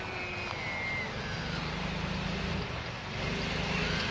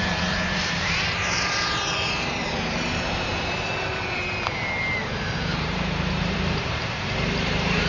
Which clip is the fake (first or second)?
second